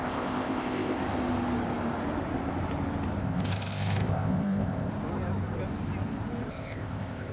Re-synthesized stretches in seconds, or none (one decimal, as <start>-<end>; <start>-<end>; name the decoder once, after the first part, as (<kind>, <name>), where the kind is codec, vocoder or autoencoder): 0.0-1.0 (codec, ZipCodec); 3.2-4.9; 6.5-7.3

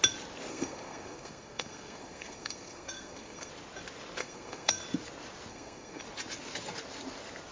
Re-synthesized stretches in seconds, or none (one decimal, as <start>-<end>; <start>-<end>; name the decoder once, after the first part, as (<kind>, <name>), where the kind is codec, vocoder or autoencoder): 0.5-3.5 (codec, SNAC); 4.2-4.8; 5.5-6.0